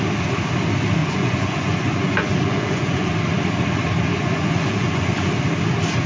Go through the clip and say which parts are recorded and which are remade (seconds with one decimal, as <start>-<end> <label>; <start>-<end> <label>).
0.0-1.0 recorded; 1.0-3.1 remade; 3.1-4.1 recorded; 4.1-5.3 remade; 5.3-6.1 recorded